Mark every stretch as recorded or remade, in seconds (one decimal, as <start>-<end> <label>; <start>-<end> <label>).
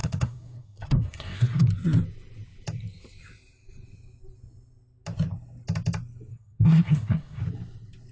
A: 0.0-1.7 remade; 1.7-6.3 recorded; 6.3-7.4 remade; 7.4-8.1 recorded